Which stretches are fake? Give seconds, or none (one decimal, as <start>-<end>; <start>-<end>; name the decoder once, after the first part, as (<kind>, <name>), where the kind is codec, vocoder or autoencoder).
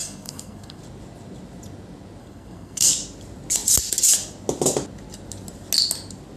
0.0-0.8 (codec, SNAC); 2.2-2.9